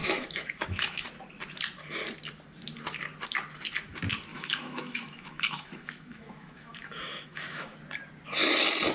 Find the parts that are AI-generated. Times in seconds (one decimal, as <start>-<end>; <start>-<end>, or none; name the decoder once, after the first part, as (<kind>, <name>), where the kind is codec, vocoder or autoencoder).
0.0-1.1 (autoencoder, DAC-VAE); 4.3-7.8